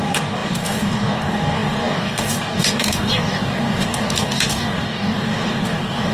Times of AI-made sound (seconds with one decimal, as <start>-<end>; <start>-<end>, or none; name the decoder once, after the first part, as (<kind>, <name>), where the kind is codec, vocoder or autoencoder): 0.0-6.1 (codec, DAC)

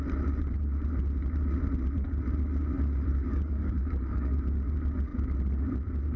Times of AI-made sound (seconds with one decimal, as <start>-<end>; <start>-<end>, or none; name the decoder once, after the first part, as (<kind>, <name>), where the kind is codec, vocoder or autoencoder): 3.1-4.4 (codec, DAC)

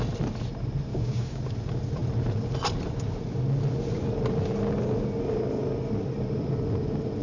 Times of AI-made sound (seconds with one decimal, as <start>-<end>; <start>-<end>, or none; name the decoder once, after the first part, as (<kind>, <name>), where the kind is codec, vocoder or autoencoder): 0.9-1.4 (codec, DAC)

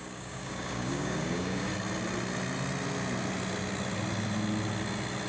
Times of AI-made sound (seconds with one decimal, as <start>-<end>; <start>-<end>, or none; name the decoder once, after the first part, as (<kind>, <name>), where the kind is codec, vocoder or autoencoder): 0.0-1.7 (codec, DAC)

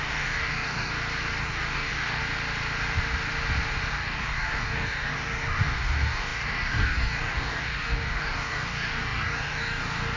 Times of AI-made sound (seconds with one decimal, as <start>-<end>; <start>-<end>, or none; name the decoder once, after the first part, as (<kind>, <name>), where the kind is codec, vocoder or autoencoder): 0.0-0.9 (codec, DAC); 1.4-2.2; 3.9-10.2